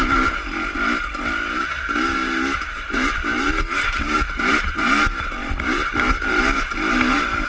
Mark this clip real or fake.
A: fake